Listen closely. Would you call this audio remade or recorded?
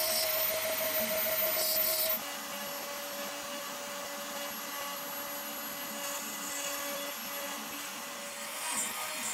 recorded